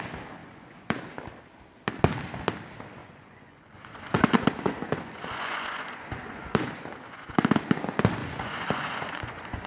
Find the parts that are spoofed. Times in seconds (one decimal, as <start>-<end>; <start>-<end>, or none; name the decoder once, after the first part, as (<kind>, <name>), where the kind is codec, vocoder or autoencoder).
0.4-1.1 (vocoder, Vocos); 3.0-7.6; 8.2-9.7